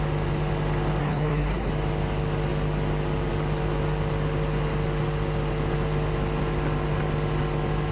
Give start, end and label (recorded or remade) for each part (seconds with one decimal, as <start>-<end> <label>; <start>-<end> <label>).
0.0-1.0 recorded; 1.0-1.7 remade; 1.7-7.9 recorded